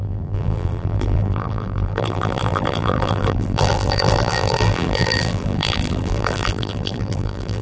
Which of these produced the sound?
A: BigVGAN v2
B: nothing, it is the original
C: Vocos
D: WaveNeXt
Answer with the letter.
A